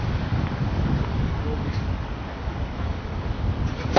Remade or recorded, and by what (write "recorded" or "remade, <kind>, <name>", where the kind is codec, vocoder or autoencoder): remade, codec, DAC